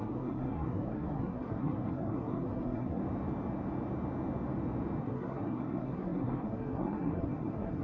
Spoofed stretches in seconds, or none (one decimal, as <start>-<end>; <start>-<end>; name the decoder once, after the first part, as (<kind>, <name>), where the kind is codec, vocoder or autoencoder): 0.0-3.0 (codec, SNAC); 5.0-7.8